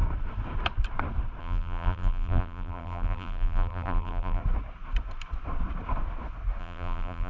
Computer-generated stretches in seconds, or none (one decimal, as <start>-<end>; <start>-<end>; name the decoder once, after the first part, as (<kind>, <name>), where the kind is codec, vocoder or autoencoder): 1.4-4.4 (vocoder, BigVGAN v2); 6.6-7.3